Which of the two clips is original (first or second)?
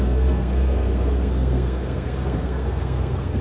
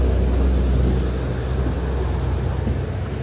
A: second